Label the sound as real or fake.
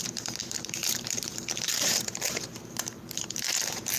fake